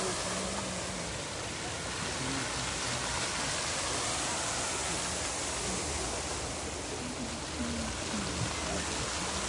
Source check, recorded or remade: recorded